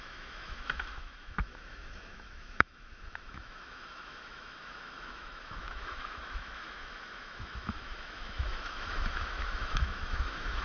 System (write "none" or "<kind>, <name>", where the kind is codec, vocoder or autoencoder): autoencoder, DAC-VAE